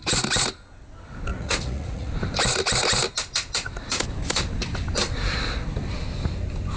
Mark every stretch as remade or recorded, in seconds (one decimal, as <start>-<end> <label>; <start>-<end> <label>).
0.0-1.3 recorded; 1.3-2.1 remade; 2.1-6.8 recorded